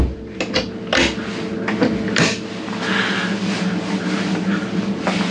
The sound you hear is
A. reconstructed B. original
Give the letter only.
B